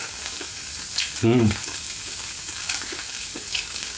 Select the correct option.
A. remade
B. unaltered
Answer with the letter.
A